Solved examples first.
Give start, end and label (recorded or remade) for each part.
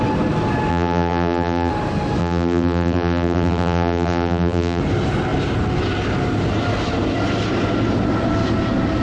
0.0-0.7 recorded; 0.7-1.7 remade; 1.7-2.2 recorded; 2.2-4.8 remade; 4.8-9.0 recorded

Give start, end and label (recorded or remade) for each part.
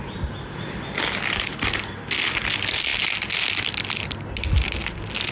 0.0-5.3 recorded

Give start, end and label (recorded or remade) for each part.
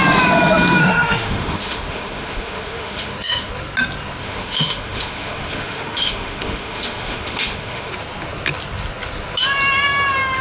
0.0-0.8 recorded; 0.8-3.5 remade; 3.5-4.2 recorded; 4.2-7.9 remade; 7.9-10.4 recorded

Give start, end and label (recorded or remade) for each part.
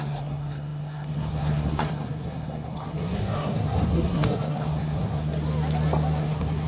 0.0-5.3 remade; 5.3-6.2 recorded; 6.2-6.7 remade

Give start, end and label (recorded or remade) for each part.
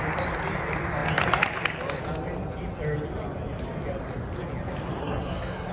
0.0-5.0 recorded; 5.0-5.7 remade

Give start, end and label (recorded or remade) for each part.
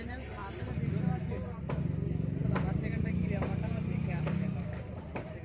0.0-2.4 recorded; 2.4-4.4 remade; 4.4-5.4 recorded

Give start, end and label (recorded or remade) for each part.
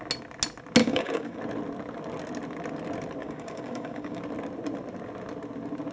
0.0-0.8 recorded; 0.8-1.4 remade; 1.4-3.2 recorded; 3.2-4.2 remade; 4.2-5.9 recorded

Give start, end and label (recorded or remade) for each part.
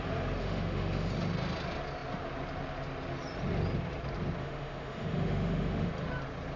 0.0-0.4 recorded; 0.4-1.1 remade; 1.1-4.4 recorded; 4.4-5.9 remade; 5.9-6.6 recorded